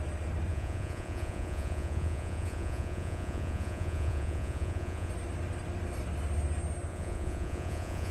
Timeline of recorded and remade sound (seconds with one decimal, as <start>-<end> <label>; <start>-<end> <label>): 0.0-0.5 recorded; 0.5-5.1 remade; 5.1-6.9 recorded; 6.9-8.1 remade